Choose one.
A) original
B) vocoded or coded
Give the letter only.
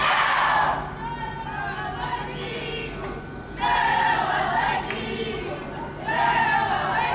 A